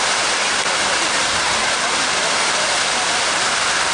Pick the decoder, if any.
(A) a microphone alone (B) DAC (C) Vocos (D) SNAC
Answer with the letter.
A